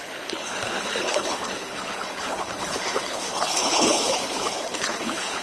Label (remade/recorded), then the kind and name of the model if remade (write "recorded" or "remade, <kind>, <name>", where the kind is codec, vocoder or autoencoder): remade, codec, HILCodec